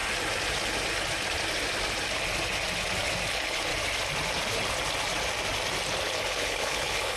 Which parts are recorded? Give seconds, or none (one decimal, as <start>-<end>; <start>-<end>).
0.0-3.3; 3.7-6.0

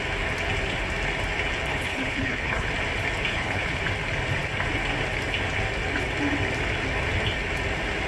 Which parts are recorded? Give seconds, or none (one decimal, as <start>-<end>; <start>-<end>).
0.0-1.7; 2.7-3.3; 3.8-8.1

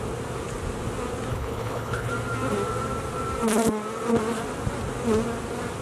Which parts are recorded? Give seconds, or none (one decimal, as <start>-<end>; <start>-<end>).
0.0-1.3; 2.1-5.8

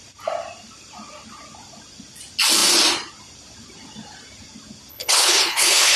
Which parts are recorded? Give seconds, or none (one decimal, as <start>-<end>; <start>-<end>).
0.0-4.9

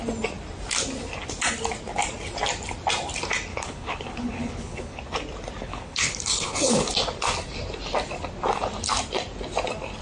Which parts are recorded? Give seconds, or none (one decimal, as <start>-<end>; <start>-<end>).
0.0-3.5; 5.0-5.6; 6.9-10.0

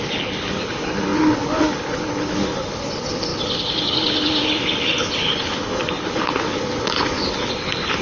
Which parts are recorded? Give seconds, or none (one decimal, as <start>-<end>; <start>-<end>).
none

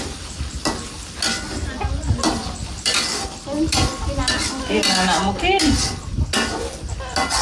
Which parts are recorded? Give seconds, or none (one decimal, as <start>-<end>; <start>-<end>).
0.0-7.4

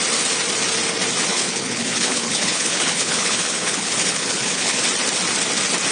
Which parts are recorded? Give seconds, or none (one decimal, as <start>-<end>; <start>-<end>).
0.0-1.3; 4.8-5.9